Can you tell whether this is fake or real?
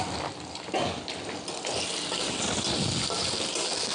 real